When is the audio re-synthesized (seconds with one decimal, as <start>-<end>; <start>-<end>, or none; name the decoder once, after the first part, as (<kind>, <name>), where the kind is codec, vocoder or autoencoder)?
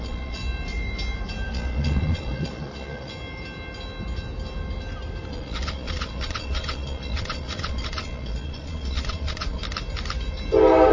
0.0-0.4 (vocoder, Vocos); 1.5-3.1; 5.3-9.6